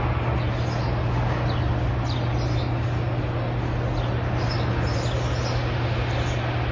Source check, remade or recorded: recorded